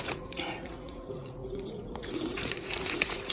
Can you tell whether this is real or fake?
fake